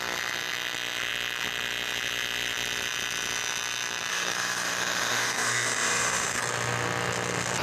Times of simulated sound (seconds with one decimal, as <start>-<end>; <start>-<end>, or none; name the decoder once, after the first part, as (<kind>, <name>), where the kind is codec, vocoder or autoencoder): 4.1-6.4 (autoencoder, DAC-VAE)